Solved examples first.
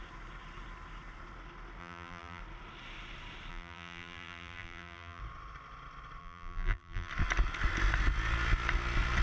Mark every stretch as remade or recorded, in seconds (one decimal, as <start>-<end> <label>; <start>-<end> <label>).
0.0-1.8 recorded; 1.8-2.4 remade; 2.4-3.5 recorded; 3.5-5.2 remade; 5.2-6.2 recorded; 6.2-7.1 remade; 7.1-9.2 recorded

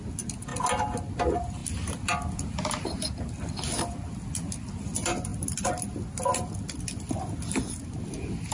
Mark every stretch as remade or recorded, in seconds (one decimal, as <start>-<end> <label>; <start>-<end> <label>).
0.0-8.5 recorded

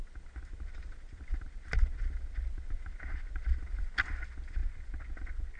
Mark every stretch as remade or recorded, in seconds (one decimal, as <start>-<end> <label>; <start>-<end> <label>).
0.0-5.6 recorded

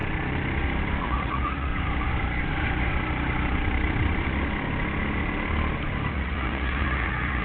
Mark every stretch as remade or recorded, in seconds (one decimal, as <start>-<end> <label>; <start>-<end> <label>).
0.0-1.0 recorded; 1.0-1.7 remade; 1.7-6.1 recorded; 6.1-7.4 remade